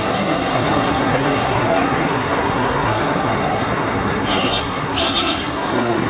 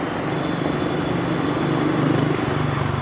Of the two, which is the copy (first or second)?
first